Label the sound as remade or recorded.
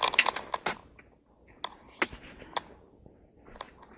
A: recorded